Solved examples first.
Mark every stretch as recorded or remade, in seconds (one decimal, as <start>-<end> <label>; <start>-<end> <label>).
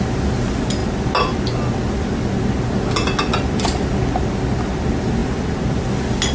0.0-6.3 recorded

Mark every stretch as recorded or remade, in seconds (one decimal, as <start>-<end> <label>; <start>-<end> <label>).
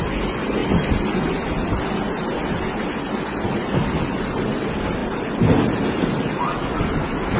0.0-7.4 recorded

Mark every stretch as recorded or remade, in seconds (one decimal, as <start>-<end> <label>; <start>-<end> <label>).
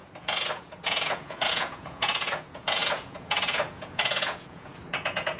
0.0-5.4 remade